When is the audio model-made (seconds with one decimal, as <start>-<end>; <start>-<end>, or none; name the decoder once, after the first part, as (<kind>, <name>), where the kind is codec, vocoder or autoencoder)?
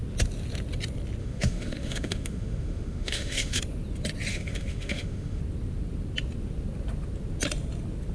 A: 1.2-3.6 (autoencoder, DAC-VAE); 4.3-5.4